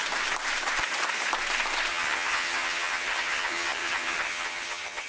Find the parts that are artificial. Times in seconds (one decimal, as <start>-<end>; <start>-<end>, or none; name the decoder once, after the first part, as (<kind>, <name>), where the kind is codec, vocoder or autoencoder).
1.9-5.1 (vocoder, HiFi-GAN)